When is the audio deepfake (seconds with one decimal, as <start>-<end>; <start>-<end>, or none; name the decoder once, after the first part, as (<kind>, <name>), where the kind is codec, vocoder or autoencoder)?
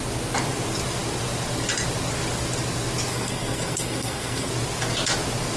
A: 3.1-4.5 (codec, SNAC)